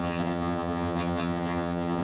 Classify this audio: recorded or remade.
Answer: remade